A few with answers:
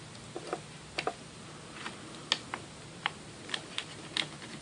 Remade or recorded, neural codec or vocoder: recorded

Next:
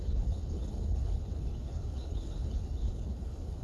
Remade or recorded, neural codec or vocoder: remade, codec, HILCodec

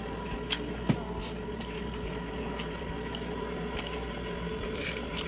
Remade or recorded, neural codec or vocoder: recorded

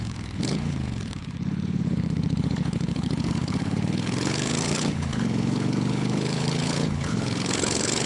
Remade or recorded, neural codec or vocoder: remade, codec, HILCodec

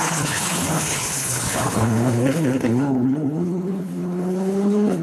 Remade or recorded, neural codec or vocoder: remade, codec, HILCodec